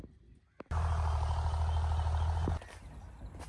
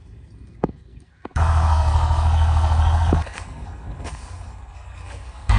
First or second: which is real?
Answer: first